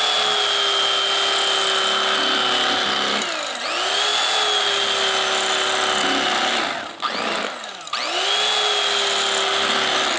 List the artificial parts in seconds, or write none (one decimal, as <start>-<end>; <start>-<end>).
none